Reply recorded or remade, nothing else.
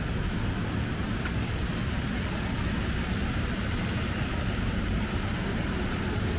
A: recorded